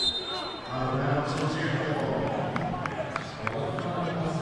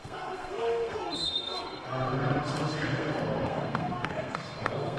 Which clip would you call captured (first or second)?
first